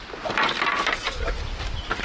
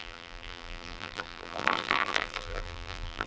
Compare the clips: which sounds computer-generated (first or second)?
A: second